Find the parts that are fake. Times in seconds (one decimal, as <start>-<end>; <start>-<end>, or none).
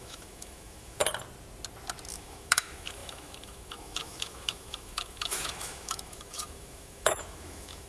0.0-1.0; 2.1-7.9